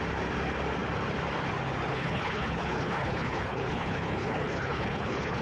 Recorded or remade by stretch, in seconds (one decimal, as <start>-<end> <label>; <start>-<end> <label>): 0.0-1.9 recorded; 1.9-5.4 remade